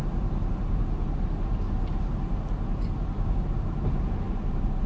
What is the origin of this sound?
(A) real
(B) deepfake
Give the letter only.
A